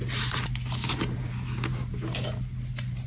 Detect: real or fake real